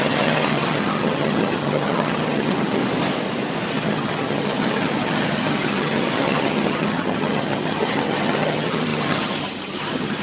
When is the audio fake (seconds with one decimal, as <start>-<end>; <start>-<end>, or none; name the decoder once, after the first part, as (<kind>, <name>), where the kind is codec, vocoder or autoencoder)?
0.0-2.8 (vocoder, HiFi-GAN); 3.7-10.2

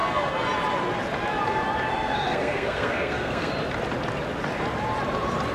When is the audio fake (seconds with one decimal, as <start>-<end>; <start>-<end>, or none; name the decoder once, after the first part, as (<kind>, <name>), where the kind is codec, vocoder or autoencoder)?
1.9-3.5 (codec, SNAC)

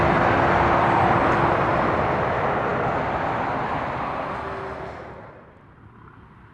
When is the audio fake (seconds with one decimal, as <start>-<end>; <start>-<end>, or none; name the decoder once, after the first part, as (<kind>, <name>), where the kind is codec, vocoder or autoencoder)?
none

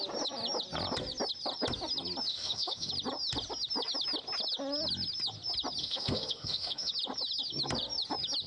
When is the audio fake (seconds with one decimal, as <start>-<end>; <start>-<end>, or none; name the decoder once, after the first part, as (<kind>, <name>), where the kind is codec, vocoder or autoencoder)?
2.3-2.9 (autoencoder, DAC-VAE); 5.8-6.9

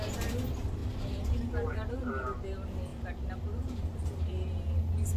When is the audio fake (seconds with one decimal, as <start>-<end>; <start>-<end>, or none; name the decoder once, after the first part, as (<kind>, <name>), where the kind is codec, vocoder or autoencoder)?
0.8-2.1 (vocoder, BigVGAN v2); 2.9-5.2

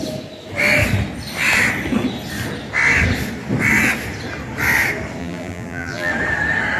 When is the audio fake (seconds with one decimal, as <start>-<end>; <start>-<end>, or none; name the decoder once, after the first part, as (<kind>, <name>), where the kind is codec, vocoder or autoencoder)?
5.2-6.1 (vocoder, BigVGAN v2)